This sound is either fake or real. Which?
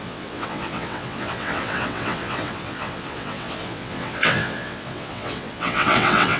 fake